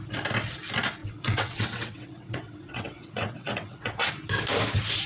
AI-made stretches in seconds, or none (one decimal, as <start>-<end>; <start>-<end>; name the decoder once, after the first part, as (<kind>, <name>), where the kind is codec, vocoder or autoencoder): 1.0-4.1 (vocoder, WaveNeXt)

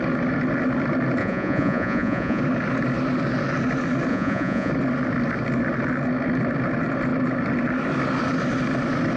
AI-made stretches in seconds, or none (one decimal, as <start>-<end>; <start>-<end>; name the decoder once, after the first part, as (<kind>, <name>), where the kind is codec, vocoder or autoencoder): 1.2-2.4 (vocoder, Vocos); 4.1-4.7

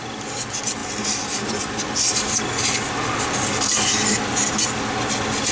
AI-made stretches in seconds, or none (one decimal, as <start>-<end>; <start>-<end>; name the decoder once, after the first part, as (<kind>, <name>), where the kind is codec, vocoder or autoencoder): none

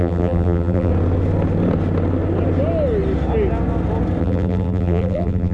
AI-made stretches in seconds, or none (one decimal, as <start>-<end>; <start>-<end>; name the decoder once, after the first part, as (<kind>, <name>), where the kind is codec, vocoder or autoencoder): 0.0-0.9 (vocoder, BigVGAN v2); 4.2-5.5

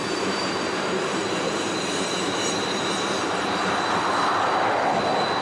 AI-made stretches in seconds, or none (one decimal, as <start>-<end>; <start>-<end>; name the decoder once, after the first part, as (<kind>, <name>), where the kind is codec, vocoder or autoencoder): 0.0-2.8 (vocoder, BigVGAN v2)

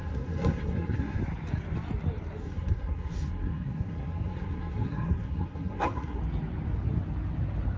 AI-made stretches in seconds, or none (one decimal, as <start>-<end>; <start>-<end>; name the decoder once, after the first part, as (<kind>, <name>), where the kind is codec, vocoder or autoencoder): 0.0-1.2 (codec, SNAC); 2.4-6.2